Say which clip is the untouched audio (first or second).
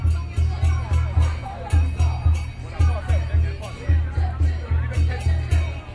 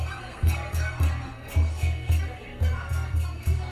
first